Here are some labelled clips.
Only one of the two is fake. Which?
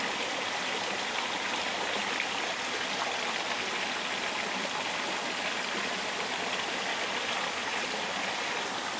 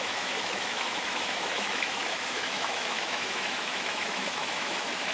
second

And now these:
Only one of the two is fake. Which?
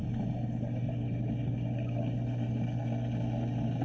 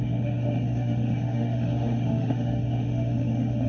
second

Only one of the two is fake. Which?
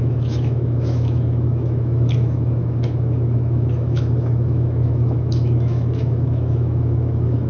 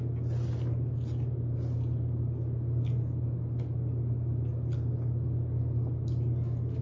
first